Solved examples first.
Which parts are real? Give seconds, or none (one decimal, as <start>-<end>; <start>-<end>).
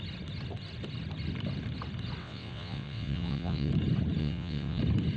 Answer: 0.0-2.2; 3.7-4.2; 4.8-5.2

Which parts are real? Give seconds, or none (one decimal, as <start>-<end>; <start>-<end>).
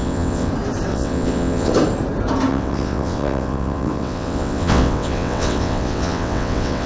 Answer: 0.5-0.9; 1.7-2.5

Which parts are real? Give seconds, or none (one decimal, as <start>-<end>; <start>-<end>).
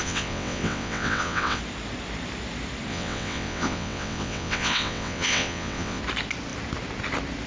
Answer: 1.6-2.9; 6.0-7.5